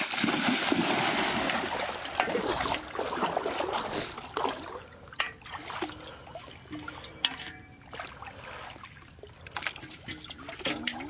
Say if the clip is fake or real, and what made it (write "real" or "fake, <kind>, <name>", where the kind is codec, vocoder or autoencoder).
real